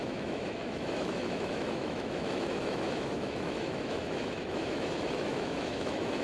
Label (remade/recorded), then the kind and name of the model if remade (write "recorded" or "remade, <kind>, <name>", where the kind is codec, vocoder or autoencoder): remade, autoencoder, DAC-VAE